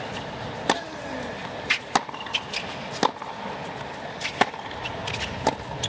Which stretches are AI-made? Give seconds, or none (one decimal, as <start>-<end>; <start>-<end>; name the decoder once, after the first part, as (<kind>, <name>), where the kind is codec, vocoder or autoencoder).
none